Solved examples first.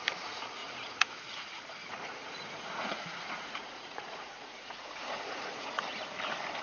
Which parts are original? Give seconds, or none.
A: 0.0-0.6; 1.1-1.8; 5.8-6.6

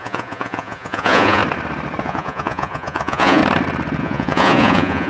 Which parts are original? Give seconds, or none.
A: 1.4-2.0; 3.4-4.0